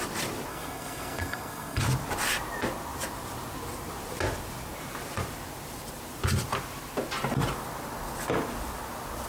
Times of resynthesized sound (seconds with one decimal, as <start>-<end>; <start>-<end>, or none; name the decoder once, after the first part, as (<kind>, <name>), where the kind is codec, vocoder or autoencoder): 0.5-1.8 (codec, SNAC)